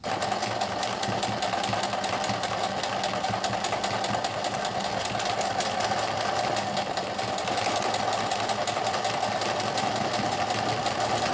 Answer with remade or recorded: recorded